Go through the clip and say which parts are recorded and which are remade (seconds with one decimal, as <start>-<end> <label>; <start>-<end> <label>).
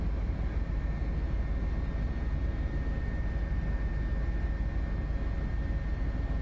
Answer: 0.0-6.4 recorded